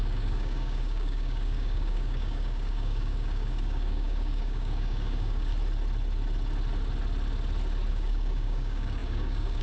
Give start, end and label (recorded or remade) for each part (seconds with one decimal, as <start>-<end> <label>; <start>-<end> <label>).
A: 0.0-5.5 remade; 5.5-7.9 recorded; 7.9-9.6 remade